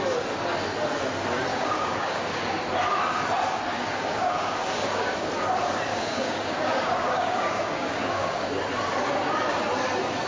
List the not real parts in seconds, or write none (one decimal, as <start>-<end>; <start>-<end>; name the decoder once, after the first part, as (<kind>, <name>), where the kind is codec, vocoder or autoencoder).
1.5-2.6 (codec, DAC); 3.7-5.3; 5.9-8.5